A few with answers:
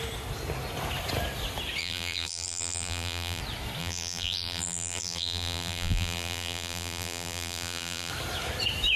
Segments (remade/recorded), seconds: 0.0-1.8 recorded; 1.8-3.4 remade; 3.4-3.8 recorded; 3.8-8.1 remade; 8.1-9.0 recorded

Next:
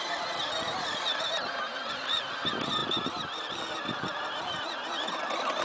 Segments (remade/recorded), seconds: 0.0-5.6 recorded

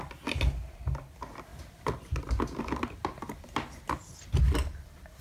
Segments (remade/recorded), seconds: 0.0-5.2 recorded